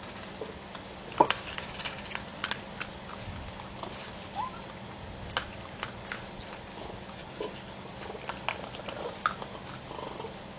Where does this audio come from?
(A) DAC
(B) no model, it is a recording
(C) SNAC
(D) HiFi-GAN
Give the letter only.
B